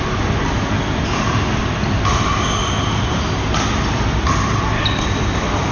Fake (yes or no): no